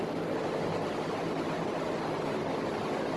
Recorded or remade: recorded